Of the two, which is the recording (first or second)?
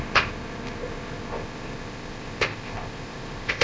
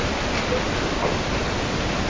second